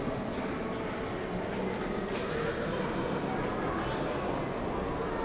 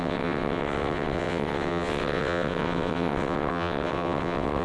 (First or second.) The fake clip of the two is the second